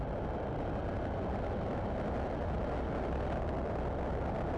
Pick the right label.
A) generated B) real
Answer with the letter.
B